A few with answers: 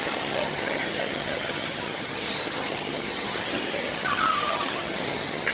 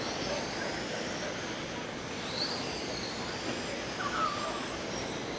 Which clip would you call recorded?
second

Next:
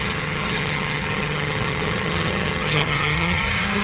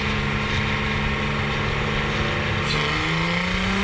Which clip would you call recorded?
second